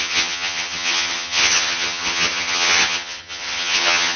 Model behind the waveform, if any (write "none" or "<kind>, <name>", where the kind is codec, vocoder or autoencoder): vocoder, HiFi-GAN